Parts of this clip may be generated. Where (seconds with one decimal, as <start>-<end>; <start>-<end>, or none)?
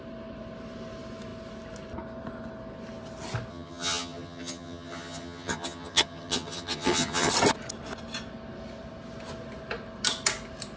3.5-7.3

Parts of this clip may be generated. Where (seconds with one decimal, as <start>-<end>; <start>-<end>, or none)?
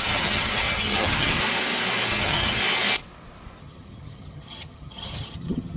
0.0-1.4; 2.1-2.6; 3.6-5.8